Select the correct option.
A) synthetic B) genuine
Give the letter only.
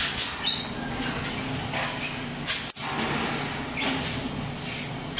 B